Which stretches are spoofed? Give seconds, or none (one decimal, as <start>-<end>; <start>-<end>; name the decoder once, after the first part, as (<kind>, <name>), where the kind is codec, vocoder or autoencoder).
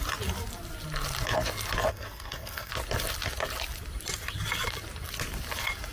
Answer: 1.9-2.7 (codec, SNAC)